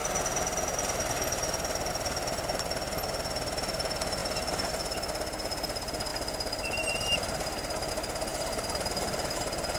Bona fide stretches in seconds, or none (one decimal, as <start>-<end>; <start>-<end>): 0.0-4.2; 4.7-6.1; 7.9-8.3; 9.4-9.8